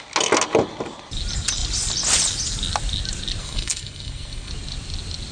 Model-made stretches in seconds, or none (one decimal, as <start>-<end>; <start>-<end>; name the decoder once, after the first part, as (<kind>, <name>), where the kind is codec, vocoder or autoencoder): 3.4-4.5 (codec, SNAC)